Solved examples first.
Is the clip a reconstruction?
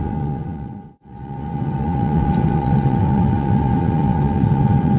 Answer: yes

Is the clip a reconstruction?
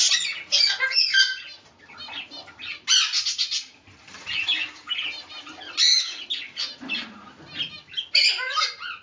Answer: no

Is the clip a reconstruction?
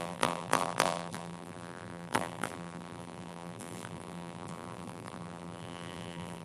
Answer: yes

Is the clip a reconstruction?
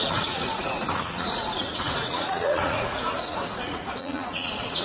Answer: yes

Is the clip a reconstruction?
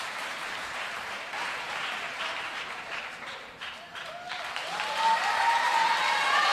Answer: yes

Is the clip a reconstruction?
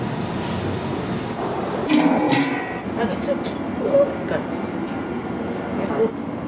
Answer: no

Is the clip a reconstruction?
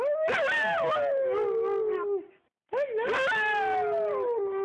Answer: no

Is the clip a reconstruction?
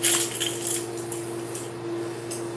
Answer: no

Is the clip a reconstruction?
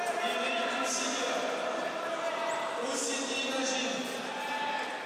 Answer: no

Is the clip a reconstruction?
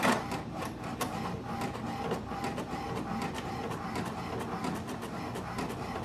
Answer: no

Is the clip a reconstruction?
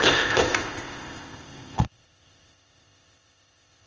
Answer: yes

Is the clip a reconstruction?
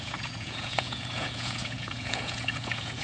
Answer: yes